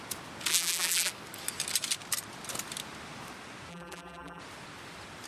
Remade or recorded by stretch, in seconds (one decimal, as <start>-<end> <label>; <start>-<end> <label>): 0.0-0.5 recorded; 0.5-1.1 remade; 1.1-3.7 recorded; 3.7-4.4 remade; 4.4-5.3 recorded